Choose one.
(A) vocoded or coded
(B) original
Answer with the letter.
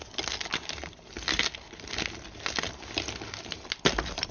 B